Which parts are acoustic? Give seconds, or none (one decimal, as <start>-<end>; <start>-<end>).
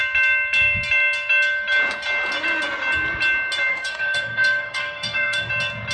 0.0-3.7; 5.5-5.9